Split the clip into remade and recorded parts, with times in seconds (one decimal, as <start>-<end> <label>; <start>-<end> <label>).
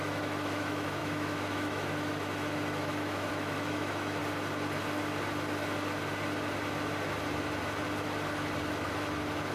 0.0-4.2 remade; 4.2-8.7 recorded; 8.7-9.5 remade